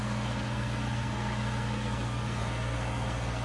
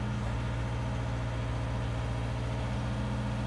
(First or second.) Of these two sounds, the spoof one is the first